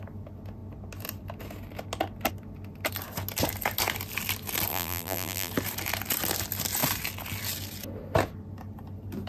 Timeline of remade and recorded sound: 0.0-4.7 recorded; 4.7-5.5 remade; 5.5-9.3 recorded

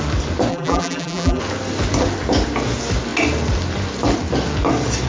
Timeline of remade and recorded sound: 0.0-0.5 recorded; 0.5-1.4 remade; 1.4-5.1 recorded

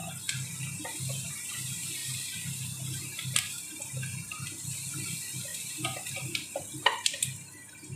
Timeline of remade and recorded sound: 0.0-5.5 recorded; 5.5-6.6 remade; 6.6-8.0 recorded